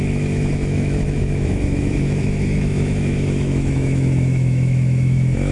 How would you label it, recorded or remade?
remade